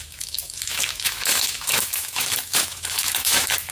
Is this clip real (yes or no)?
no